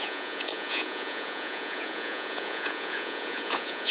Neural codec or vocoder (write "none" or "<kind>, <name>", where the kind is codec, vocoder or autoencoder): vocoder, Vocos